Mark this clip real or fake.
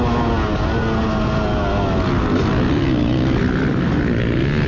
real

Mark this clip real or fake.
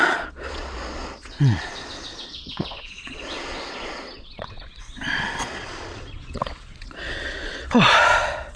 fake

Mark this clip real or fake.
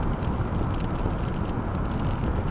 real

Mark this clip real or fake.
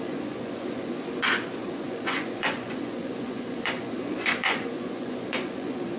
fake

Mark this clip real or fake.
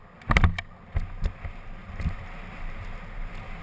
real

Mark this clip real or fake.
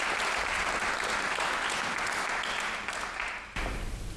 real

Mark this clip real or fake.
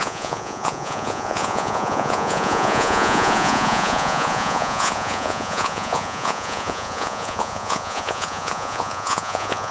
fake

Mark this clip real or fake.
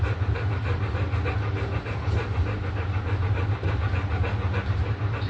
real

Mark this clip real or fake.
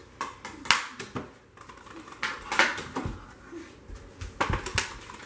real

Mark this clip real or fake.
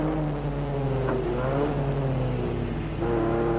real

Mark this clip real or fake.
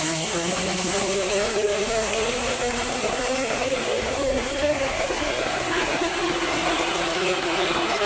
fake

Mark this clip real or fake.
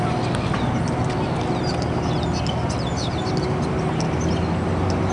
real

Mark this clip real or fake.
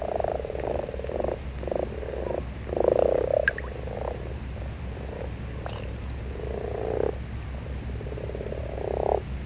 real